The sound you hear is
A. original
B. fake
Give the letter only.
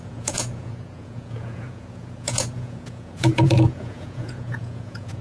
B